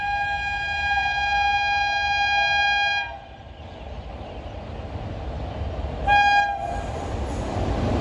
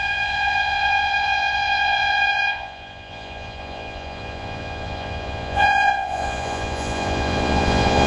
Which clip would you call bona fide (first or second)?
first